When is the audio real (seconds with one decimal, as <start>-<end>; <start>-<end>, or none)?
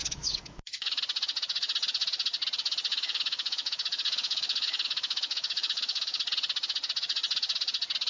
1.0-2.9; 6.2-8.1